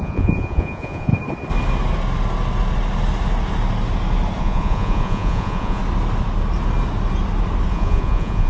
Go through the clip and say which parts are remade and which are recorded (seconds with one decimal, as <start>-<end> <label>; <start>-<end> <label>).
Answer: 0.0-1.1 remade; 1.1-4.4 recorded; 4.4-5.8 remade; 5.8-7.7 recorded; 7.7-8.5 remade